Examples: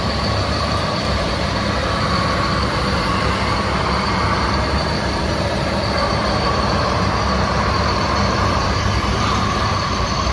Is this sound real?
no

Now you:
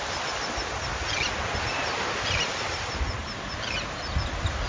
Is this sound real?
yes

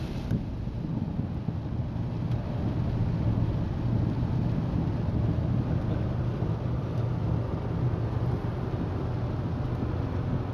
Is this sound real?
yes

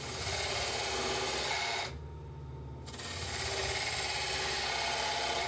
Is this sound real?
yes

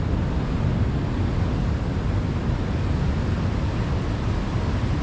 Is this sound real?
yes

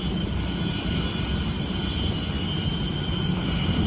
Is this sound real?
yes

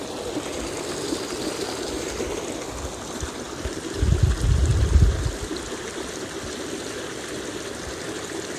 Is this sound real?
yes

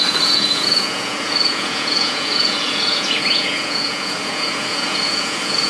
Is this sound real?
no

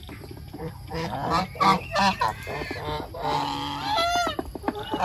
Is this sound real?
yes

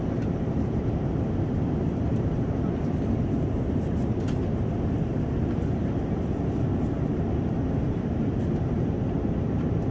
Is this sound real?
no